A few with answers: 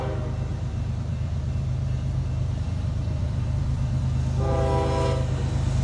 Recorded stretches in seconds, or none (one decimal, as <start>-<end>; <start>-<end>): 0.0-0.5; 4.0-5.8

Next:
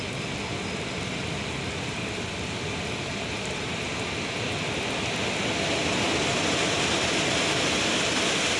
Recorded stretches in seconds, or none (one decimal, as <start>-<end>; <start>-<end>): 0.0-8.6

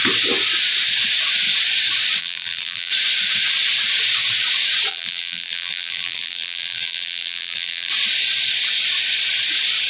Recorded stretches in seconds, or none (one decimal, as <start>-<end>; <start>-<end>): 0.0-2.2; 2.9-4.9; 7.9-9.9